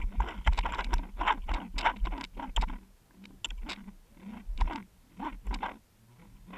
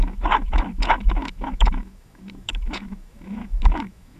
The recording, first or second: first